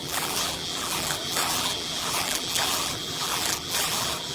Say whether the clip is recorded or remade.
remade